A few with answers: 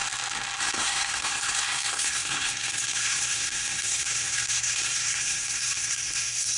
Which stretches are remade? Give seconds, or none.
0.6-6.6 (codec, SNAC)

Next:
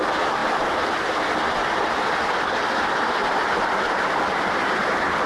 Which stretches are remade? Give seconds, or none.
none

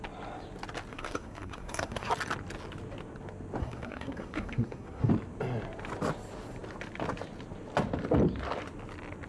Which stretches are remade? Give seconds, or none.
0.9-2.1 (codec, SNAC); 3.6-5.1

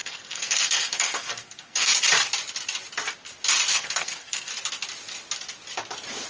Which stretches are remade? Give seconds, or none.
0.0-1.9 (codec, SNAC); 3.7-4.5

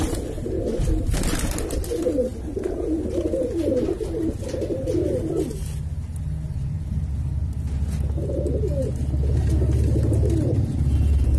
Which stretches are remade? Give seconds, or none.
none